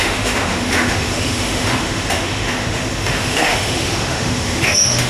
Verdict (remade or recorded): remade